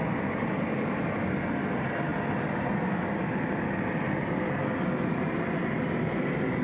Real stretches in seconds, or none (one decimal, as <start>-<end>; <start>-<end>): 0.0-6.6